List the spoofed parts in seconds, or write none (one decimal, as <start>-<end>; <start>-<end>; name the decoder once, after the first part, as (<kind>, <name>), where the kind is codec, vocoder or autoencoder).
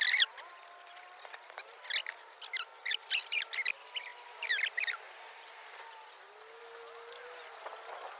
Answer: none